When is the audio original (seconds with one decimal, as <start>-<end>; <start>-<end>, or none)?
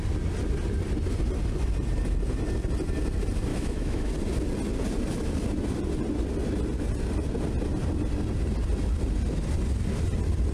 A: 0.0-3.5; 4.1-10.5